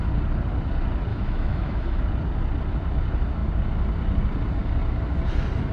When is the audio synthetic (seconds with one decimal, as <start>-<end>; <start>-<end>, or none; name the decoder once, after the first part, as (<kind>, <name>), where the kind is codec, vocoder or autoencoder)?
1.1-2.0 (autoencoder, DAC-VAE)

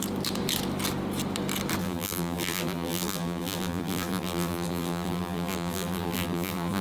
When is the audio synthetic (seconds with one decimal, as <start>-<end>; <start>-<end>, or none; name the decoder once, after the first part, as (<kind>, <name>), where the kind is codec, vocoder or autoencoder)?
1.8-6.8 (vocoder, BigVGAN v2)